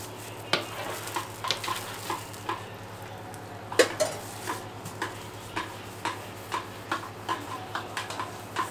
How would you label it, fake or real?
real